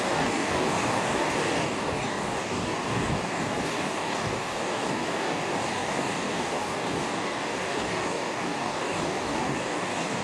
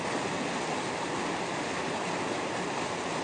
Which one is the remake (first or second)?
first